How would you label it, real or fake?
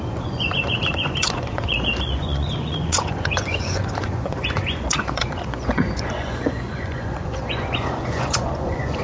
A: fake